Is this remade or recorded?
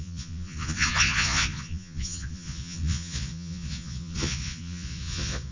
remade